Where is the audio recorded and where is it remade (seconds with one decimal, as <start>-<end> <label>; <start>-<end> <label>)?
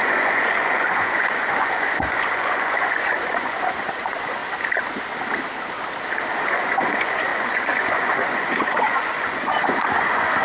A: 0.0-4.4 remade; 4.4-6.5 recorded; 6.5-10.4 remade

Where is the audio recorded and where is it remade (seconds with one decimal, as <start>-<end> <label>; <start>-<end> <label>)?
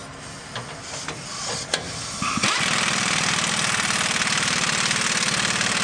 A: 0.0-5.8 recorded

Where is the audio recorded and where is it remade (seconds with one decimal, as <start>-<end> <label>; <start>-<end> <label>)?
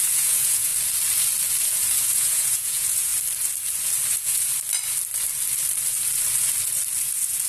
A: 0.0-0.7 remade; 0.7-2.1 recorded; 2.1-3.1 remade; 3.1-4.1 recorded; 4.1-4.5 remade; 4.5-7.0 recorded; 7.0-7.5 remade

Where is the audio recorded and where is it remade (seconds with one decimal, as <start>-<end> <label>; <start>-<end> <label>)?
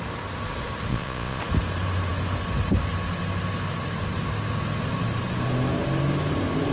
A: 0.0-0.9 recorded; 0.9-1.4 remade; 1.4-6.7 recorded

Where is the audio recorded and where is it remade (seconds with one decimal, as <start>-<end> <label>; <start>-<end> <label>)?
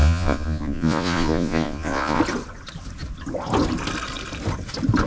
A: 0.0-2.2 remade; 2.2-5.1 recorded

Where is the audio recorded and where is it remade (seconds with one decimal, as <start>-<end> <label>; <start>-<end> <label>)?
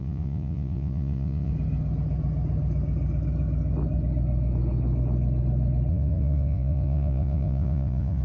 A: 0.0-1.5 remade; 1.5-5.9 recorded; 5.9-8.2 remade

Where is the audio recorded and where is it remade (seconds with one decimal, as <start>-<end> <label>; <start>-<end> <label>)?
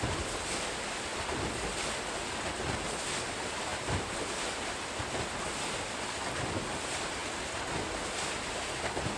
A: 0.0-9.2 recorded